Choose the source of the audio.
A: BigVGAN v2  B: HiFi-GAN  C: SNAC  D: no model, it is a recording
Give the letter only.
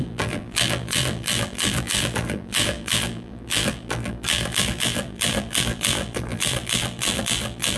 A